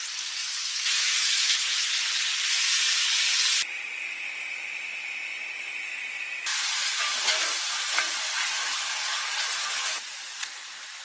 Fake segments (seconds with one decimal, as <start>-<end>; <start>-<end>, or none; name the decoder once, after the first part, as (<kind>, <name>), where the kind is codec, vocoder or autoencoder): 0.4-1.9 (autoencoder, DAC-VAE)